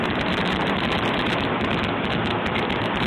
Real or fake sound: real